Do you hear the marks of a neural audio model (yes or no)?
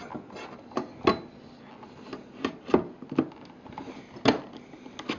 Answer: no